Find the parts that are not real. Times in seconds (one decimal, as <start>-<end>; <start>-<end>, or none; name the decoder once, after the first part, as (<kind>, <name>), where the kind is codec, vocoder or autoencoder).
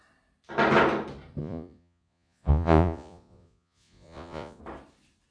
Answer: 1.4-4.6 (vocoder, Vocos)